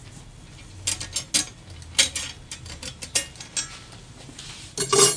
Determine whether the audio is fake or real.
real